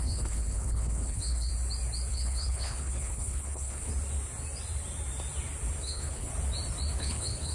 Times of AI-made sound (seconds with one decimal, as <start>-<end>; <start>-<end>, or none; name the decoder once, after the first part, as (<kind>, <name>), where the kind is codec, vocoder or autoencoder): 0.0-1.5 (codec, HILCodec); 2.1-3.9; 5.8-6.3; 7.0-7.5

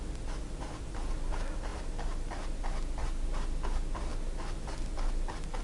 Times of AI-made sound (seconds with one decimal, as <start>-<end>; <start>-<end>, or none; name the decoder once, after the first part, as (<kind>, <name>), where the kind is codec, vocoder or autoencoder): none

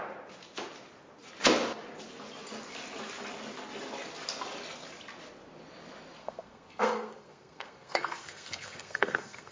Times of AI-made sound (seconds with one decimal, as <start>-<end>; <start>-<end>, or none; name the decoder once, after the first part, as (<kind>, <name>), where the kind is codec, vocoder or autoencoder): 6.2-9.5 (codec, SNAC)

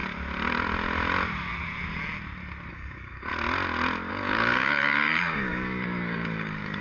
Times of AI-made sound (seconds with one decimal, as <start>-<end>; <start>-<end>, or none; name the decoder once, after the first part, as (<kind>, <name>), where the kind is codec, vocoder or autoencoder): 2.7-3.3 (codec, DAC); 4.1-6.8